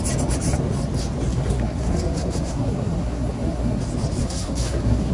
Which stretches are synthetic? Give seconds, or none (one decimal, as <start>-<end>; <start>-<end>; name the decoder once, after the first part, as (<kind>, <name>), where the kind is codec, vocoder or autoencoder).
1.3-3.8 (codec, SNAC); 4.2-5.1